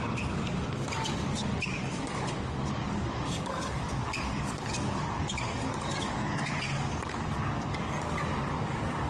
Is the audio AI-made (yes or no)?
yes